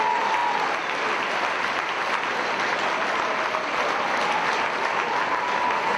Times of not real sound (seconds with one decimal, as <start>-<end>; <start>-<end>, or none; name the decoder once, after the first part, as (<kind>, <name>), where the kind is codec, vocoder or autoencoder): none